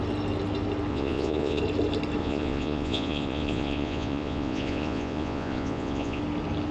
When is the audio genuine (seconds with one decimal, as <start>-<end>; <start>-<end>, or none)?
0.0-0.9; 1.6-2.2; 6.2-6.7